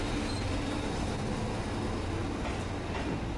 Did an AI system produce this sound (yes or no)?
no